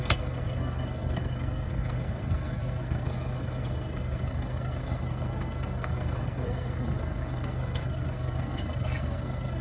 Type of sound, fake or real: fake